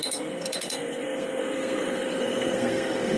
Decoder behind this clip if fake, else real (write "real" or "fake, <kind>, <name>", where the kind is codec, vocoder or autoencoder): fake, codec, SNAC